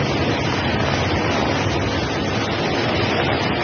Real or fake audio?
real